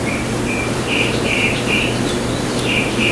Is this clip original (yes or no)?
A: no